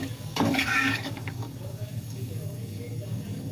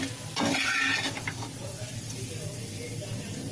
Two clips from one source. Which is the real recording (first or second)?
second